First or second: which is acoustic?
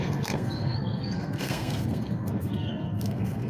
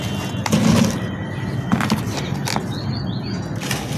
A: second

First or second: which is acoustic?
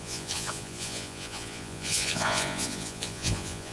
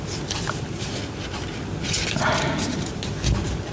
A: second